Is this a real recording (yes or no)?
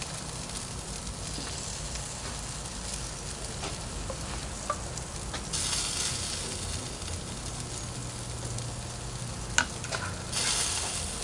yes